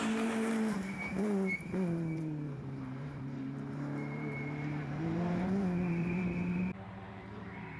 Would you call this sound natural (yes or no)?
no